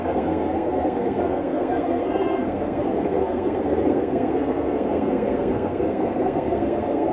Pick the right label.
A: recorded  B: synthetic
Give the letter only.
B